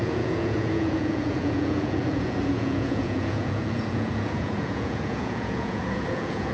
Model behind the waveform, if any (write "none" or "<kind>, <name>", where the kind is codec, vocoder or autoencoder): vocoder, Vocos